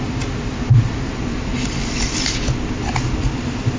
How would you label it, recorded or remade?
recorded